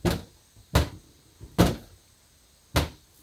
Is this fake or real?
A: real